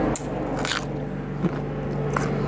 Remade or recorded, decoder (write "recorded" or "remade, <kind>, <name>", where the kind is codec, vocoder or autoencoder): recorded